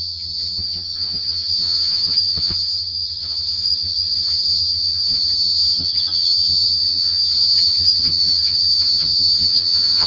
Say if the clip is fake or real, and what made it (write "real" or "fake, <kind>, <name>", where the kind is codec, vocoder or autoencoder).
fake, vocoder, HiFi-GAN